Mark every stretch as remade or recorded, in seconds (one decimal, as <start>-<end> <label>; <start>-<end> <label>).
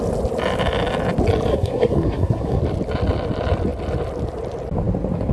0.0-1.5 recorded; 1.5-2.6 remade; 2.6-5.3 recorded